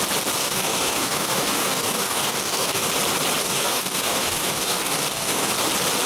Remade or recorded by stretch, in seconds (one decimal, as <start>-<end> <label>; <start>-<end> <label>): 0.0-0.4 recorded; 0.4-2.9 remade; 2.9-3.4 recorded; 3.4-5.5 remade; 5.5-6.1 recorded